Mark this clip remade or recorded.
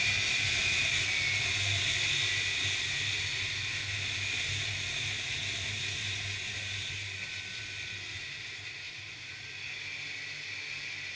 recorded